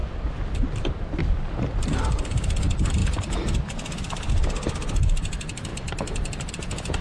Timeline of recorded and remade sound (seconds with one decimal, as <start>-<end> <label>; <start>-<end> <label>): 0.0-3.0 remade; 3.0-4.3 recorded; 4.3-7.0 remade